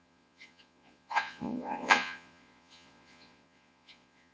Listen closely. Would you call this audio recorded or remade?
remade